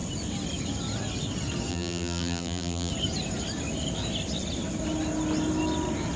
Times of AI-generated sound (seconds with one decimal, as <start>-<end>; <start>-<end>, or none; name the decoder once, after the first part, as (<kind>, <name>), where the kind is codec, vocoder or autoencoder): 1.7-2.9 (vocoder, BigVGAN v2)